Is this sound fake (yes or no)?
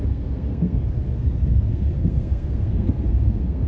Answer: yes